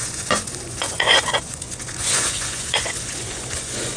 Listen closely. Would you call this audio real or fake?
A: fake